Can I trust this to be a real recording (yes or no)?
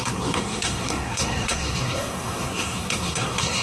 no